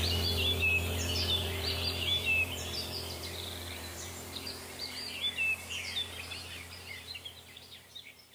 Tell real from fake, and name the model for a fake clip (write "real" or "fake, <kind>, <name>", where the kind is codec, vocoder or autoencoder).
fake, vocoder, BigVGAN v2